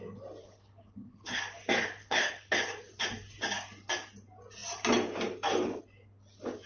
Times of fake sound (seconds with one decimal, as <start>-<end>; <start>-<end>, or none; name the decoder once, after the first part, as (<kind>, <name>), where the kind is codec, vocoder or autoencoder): 0.4-1.4 (codec, HILCodec); 2.0-2.5

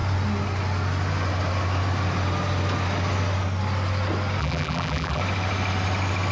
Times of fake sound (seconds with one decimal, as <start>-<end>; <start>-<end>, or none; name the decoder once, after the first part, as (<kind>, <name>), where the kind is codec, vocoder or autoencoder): 4.4-5.2 (vocoder, BigVGAN v2)

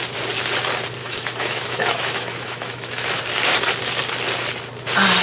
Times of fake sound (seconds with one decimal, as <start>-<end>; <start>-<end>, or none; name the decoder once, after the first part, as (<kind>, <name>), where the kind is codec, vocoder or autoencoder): 1.0-3.2 (autoencoder, DAC-VAE)

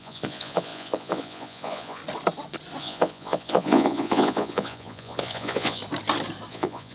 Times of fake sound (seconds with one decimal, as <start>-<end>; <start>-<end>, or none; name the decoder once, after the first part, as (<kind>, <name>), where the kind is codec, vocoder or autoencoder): 0.0-2.0 (vocoder, Vocos); 2.8-5.8; 6.5-6.9

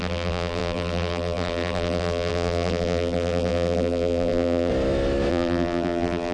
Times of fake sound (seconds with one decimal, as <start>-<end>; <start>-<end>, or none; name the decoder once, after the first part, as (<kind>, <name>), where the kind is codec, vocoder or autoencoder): 0.0-4.7 (vocoder, BigVGAN v2); 5.3-6.3

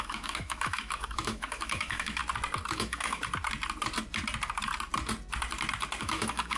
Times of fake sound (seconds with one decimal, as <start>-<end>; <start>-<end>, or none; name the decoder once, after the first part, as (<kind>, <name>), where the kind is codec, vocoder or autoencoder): 0.0-2.2 (autoencoder, DAC-VAE); 2.7-3.2; 6.0-6.6